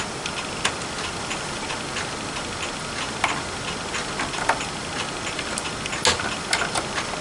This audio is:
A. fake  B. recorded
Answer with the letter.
B